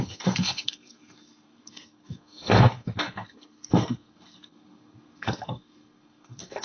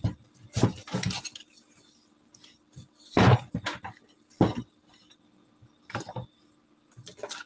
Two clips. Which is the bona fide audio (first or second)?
second